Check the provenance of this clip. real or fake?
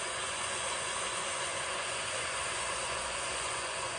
fake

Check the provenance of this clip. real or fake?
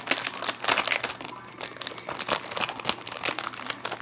real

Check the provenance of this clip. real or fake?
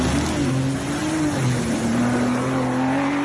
real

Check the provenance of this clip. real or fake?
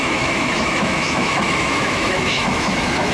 fake